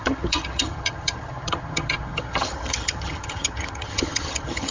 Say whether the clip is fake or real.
fake